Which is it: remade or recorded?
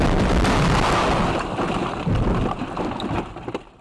recorded